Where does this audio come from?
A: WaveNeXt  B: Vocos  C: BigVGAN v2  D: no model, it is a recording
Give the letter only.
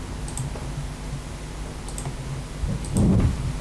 D